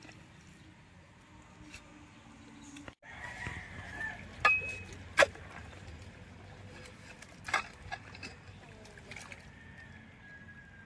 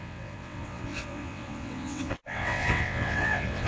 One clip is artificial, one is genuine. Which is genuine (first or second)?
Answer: first